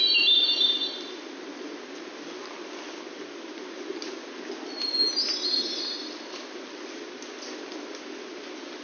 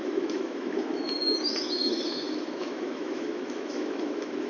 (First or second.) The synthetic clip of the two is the second